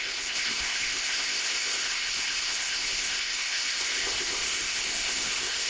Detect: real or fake fake